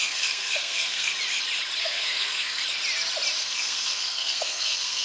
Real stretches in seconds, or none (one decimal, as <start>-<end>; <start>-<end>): 1.1-1.8; 2.6-3.4